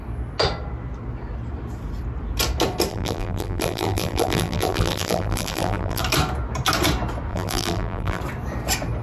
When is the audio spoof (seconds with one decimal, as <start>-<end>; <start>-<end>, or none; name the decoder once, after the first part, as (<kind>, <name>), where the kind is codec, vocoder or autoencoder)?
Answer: 2.9-6.0 (vocoder, BigVGAN v2); 7.3-8.2